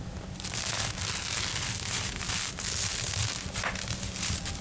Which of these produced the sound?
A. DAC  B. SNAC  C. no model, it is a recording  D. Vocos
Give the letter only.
C